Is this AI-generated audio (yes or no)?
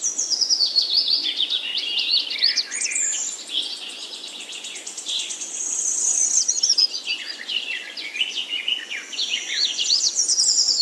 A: yes